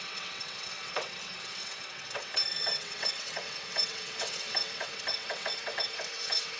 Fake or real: fake